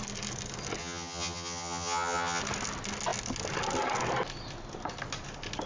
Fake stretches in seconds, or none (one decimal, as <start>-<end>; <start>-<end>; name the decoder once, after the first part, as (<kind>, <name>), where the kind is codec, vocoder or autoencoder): 0.8-2.4 (vocoder, HiFi-GAN)